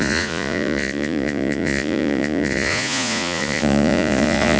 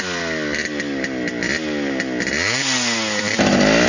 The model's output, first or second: first